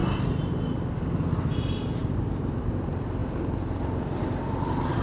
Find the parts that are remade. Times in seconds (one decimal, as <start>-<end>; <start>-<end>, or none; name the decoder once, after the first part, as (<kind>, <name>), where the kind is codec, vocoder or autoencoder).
none